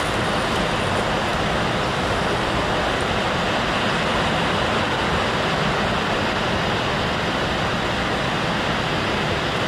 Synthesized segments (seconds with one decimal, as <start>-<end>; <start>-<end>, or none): none